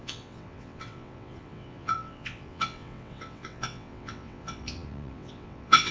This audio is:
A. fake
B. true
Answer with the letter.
A